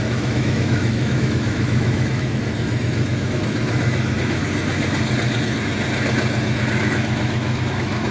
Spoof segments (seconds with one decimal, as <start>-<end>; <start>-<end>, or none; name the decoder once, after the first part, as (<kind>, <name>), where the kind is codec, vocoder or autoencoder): 0.0-4.4 (autoencoder, DAC-VAE); 6.8-8.1